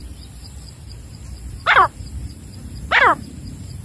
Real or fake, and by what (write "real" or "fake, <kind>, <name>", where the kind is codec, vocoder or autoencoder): fake, vocoder, BigVGAN v2